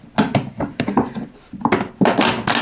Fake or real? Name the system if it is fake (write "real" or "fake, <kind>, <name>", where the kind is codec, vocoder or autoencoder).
real